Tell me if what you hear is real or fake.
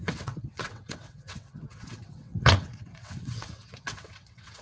fake